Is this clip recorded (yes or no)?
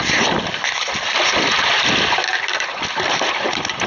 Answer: yes